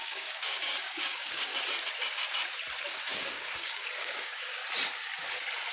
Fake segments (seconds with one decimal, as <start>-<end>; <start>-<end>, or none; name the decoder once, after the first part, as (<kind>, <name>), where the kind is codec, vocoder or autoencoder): 0.0-1.5 (codec, DAC); 3.1-4.6